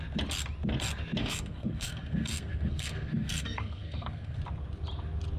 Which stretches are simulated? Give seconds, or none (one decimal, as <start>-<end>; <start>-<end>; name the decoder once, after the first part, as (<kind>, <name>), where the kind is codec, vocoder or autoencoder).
1.2-4.4 (codec, SNAC)